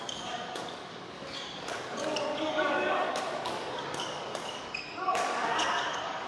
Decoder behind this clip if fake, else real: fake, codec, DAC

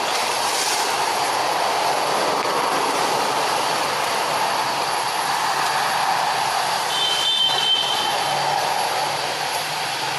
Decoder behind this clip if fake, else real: real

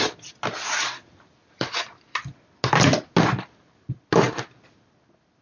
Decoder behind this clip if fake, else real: real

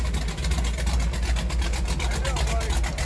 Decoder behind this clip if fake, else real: real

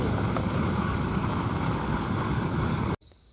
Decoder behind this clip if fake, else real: fake, codec, DAC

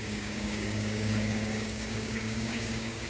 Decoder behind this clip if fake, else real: fake, codec, DAC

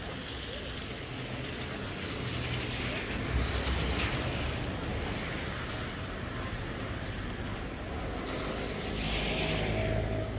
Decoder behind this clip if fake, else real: real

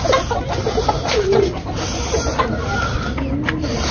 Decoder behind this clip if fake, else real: real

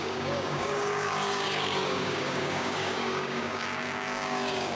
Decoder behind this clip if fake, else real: fake, codec, DAC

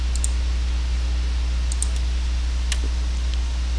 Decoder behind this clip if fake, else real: real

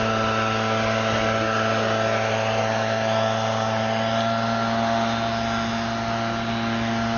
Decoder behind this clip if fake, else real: real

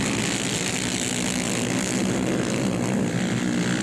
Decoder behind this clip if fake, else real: real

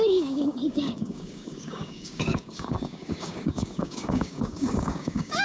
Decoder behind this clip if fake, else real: fake, codec, DAC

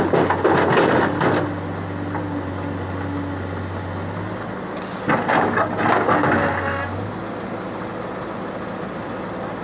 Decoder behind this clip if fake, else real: real